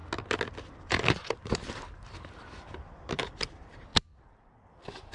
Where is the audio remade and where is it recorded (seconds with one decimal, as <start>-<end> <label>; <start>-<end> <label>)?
0.0-0.8 recorded; 0.8-3.9 remade; 3.9-5.1 recorded